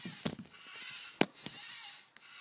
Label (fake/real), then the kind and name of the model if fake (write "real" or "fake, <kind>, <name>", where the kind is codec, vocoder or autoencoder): real